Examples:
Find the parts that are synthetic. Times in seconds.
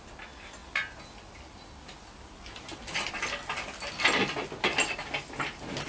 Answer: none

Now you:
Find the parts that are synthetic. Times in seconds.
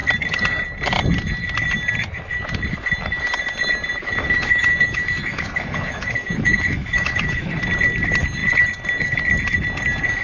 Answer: 4.0-7.5 (autoencoder, DAC-VAE)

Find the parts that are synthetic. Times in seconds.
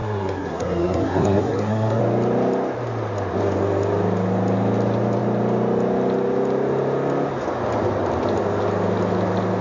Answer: 0.0-2.0 (codec, SNAC)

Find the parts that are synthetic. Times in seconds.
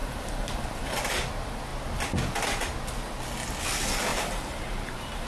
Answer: 0.0-1.0 (vocoder, BigVGAN v2); 4.1-5.3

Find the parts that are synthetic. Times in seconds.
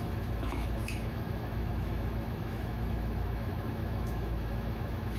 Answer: 0.0-5.2 (autoencoder, DAC-VAE)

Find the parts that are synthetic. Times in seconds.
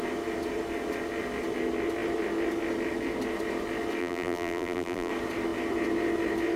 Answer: 4.0-5.1 (vocoder, BigVGAN v2)